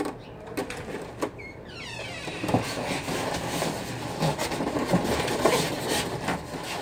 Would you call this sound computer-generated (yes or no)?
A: no